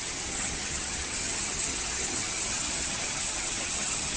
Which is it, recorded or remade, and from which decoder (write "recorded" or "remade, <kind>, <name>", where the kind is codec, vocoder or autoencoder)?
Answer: remade, vocoder, HiFi-GAN